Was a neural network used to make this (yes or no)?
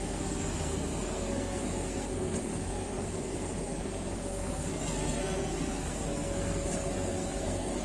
yes